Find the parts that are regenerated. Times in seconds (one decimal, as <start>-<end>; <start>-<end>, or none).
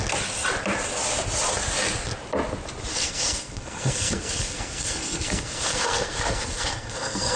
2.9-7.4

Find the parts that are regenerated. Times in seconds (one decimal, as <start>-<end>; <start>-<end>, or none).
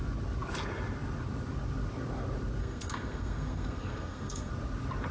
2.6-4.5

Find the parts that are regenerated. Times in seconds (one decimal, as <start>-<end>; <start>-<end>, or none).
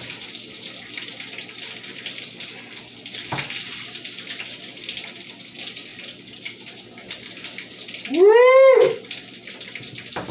none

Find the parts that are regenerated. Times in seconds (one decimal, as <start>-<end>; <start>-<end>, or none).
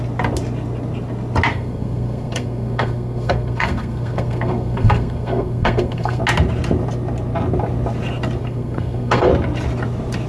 1.5-6.2; 8.4-9.3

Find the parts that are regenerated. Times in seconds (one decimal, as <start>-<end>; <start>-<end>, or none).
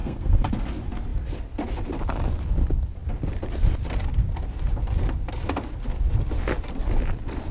0.0-0.5